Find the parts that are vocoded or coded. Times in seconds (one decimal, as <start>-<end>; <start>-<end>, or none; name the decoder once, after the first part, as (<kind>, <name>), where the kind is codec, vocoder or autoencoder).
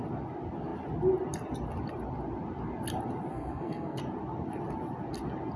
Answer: 3.3-4.0 (codec, SNAC)